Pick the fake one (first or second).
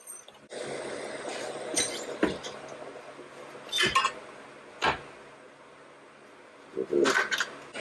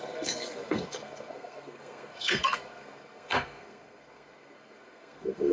second